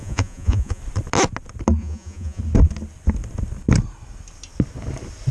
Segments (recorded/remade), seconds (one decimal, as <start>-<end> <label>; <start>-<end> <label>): 0.0-0.8 remade; 0.8-1.8 recorded; 1.8-2.4 remade; 2.4-5.3 recorded